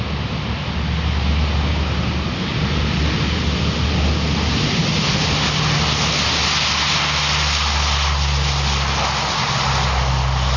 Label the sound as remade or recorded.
recorded